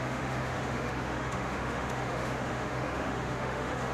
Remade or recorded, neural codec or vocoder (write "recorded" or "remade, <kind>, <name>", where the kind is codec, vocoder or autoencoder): remade, autoencoder, DAC-VAE